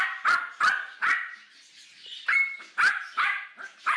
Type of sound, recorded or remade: recorded